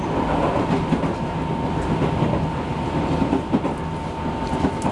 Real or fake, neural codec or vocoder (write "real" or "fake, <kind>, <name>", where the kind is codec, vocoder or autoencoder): real